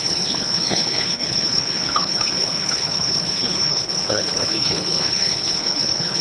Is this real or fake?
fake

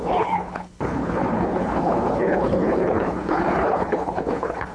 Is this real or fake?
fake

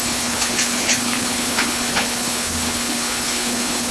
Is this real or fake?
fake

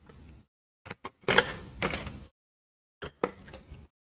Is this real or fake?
real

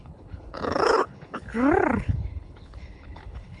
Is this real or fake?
fake